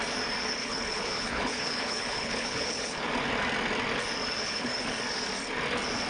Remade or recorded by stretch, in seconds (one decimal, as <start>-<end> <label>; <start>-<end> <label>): 0.0-0.6 recorded; 0.6-3.1 remade; 3.1-4.4 recorded; 4.4-5.0 remade; 5.0-6.1 recorded